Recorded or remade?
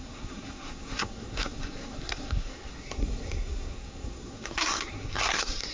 remade